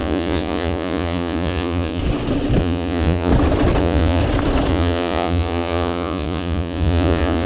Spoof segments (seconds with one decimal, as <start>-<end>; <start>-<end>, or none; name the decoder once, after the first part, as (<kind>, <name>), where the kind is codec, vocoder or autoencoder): 0.0-2.0 (vocoder, Vocos); 2.6-3.3; 3.8-4.2; 4.7-7.5